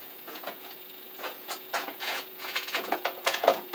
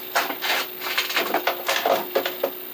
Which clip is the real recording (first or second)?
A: second